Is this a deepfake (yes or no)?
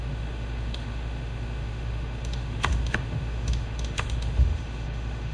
yes